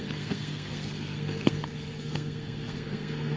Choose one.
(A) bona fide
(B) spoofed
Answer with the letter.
B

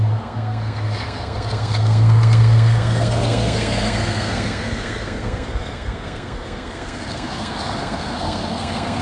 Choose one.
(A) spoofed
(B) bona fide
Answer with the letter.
A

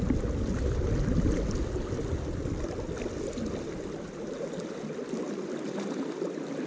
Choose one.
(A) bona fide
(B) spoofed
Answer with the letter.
A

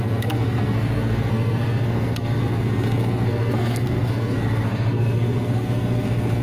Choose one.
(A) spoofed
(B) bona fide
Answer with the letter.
A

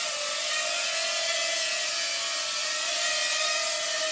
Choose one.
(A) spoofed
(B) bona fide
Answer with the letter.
B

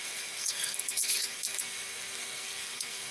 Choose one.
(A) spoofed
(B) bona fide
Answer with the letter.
A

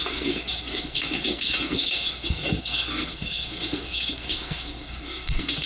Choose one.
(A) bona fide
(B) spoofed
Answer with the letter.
B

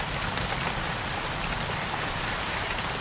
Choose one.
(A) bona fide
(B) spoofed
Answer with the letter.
A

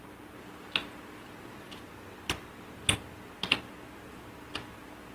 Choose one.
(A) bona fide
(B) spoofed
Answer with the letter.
A